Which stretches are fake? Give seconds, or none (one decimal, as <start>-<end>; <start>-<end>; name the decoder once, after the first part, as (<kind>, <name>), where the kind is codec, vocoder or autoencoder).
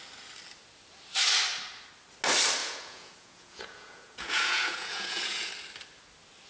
2.6-5.5 (vocoder, Vocos)